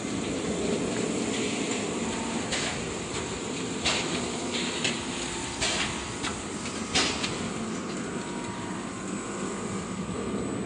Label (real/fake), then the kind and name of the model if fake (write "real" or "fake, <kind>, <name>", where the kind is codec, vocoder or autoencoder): real